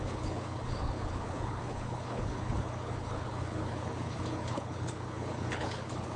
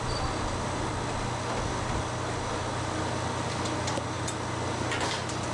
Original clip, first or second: second